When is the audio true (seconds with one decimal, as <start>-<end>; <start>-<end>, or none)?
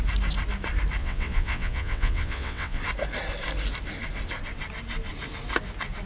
0.0-1.0; 2.8-6.1